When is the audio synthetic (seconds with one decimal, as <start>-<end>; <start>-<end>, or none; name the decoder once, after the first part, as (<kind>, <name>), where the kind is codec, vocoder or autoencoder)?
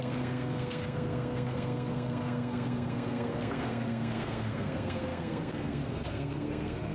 0.0-6.9 (codec, SNAC)